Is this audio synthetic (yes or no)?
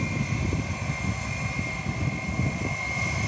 no